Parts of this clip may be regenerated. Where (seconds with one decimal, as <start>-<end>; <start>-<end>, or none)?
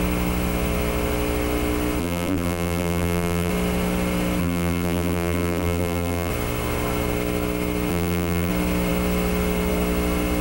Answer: 2.0-3.5; 4.4-6.3; 7.9-8.5